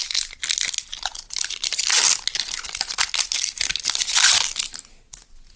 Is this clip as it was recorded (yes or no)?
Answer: yes